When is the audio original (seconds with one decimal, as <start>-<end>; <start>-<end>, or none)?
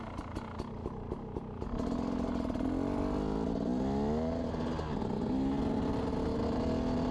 0.0-7.1